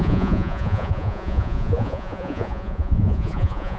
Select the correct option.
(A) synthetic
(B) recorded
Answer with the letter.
A